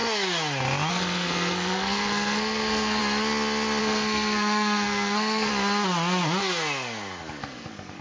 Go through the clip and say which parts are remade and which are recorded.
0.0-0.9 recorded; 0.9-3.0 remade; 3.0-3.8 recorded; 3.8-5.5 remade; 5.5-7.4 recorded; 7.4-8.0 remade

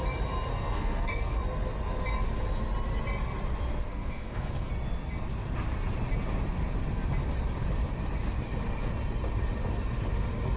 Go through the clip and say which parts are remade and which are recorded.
0.0-0.5 recorded; 0.5-1.4 remade; 1.4-3.9 recorded; 3.9-4.7 remade; 4.7-10.6 recorded

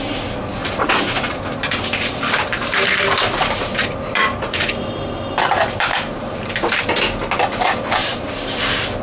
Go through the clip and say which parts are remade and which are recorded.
0.0-0.6 recorded; 0.6-5.2 remade; 5.2-5.9 recorded; 5.9-6.8 remade; 6.8-8.0 recorded; 8.0-8.6 remade; 8.6-9.0 recorded

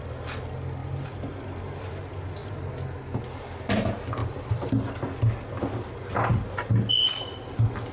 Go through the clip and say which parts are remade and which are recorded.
0.0-0.8 recorded; 0.8-1.9 remade; 1.9-4.2 recorded; 4.2-5.1 remade; 5.1-7.9 recorded